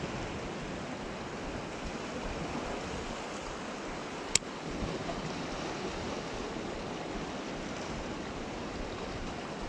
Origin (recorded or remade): recorded